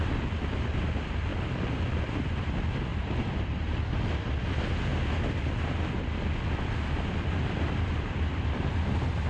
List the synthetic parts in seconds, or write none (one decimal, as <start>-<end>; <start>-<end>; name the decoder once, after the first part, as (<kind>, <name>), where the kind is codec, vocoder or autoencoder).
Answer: 0.0-4.9 (vocoder, BigVGAN v2); 7.1-9.3